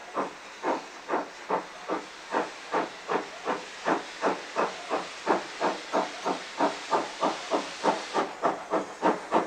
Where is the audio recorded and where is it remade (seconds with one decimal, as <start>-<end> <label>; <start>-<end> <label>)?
0.0-9.5 recorded